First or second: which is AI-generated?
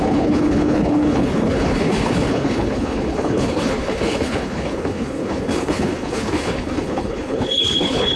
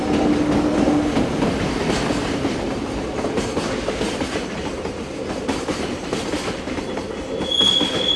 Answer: first